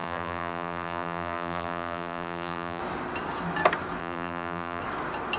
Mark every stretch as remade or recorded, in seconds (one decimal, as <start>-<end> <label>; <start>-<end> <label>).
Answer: 0.0-2.8 remade; 2.8-4.0 recorded; 4.0-4.8 remade; 4.8-5.4 recorded